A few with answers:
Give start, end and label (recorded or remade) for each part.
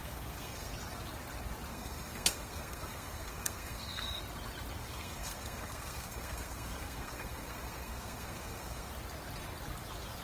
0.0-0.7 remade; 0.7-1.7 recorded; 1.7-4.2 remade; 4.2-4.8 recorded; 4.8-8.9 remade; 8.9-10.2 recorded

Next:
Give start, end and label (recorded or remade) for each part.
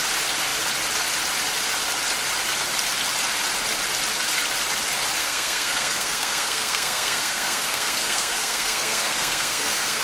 0.0-5.2 recorded; 5.2-10.0 remade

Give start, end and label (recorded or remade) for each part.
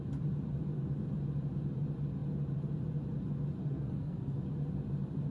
0.0-3.6 recorded; 3.6-4.5 remade; 4.5-5.3 recorded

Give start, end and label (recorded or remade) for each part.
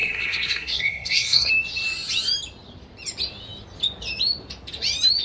0.0-1.5 remade; 1.5-5.2 recorded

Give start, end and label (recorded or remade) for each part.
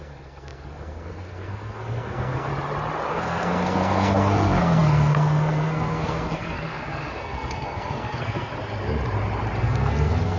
0.0-2.5 remade; 2.5-3.1 recorded; 3.1-8.5 remade; 8.5-9.6 recorded; 9.6-10.4 remade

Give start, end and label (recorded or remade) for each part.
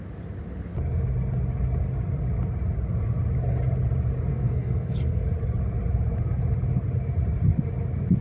0.0-4.3 recorded; 4.3-5.2 remade; 5.2-8.2 recorded